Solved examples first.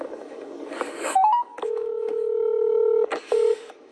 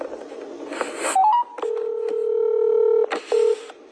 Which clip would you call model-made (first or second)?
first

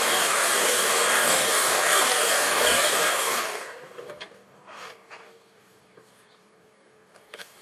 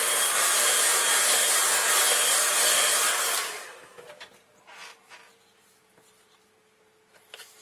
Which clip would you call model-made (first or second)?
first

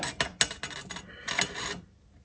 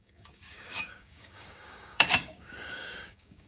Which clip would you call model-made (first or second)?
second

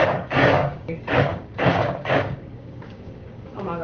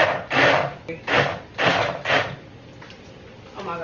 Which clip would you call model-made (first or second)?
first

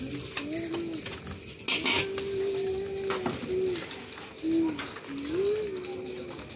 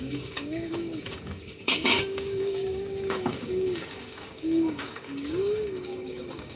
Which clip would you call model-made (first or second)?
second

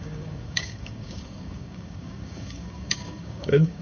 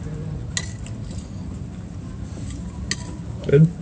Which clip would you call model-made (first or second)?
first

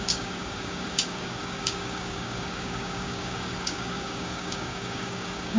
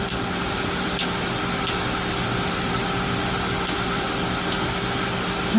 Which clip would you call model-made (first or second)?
first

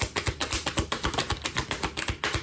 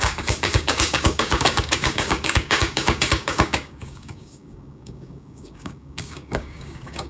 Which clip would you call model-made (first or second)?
second